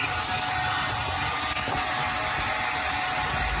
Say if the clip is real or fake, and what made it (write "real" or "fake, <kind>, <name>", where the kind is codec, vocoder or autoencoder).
real